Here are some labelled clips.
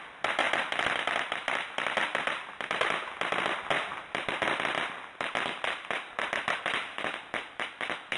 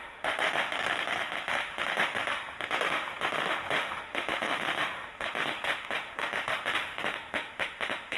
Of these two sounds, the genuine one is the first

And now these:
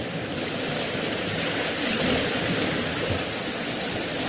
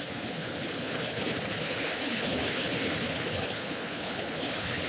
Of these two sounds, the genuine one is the first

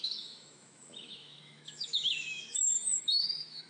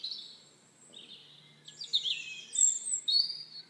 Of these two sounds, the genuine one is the second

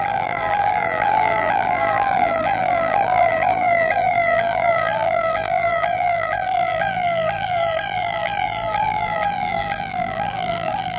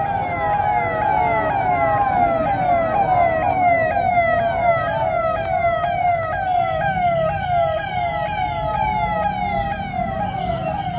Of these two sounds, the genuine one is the second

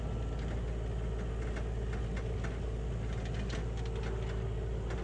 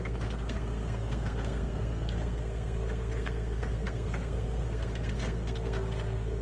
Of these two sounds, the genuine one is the first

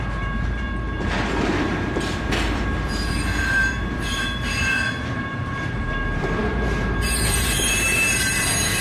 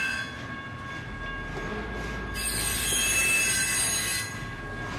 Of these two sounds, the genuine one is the second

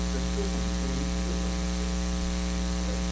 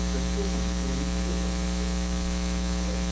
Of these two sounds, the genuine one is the first